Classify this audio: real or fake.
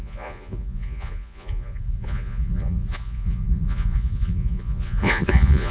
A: fake